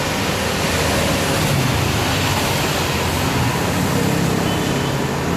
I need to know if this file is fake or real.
real